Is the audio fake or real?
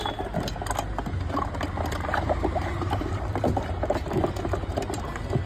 real